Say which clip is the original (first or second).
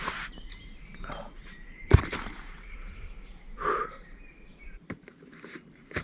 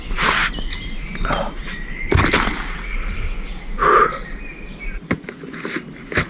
second